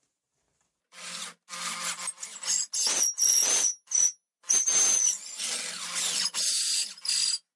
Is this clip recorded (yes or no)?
yes